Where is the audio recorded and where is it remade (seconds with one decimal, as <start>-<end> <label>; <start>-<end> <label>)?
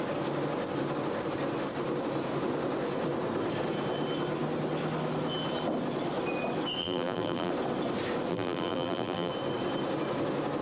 0.0-6.8 recorded; 6.8-7.5 remade; 7.5-8.3 recorded; 8.3-9.3 remade; 9.3-10.6 recorded